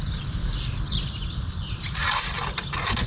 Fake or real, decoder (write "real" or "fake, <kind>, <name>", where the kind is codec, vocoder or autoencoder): real